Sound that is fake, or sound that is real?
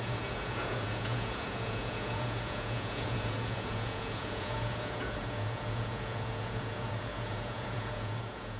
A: fake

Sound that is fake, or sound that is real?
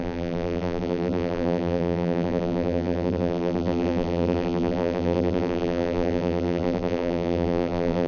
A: fake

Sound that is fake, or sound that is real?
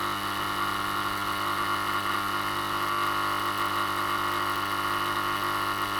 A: real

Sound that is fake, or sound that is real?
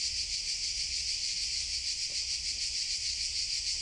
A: real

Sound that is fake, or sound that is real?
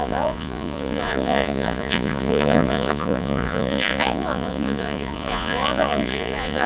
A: fake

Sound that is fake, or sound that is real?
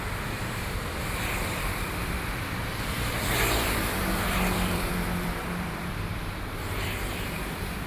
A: fake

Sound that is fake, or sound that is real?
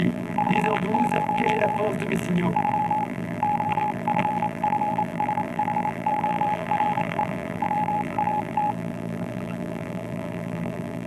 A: fake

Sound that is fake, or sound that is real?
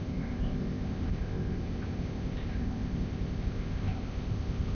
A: fake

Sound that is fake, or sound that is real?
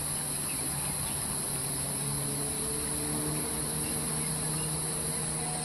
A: real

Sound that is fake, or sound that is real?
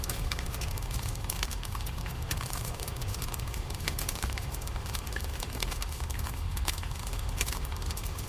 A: fake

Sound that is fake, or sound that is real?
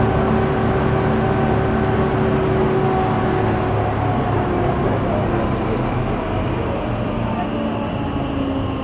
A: real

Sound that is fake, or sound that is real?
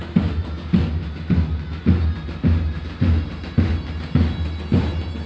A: real